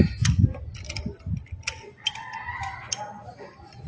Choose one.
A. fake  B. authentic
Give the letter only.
B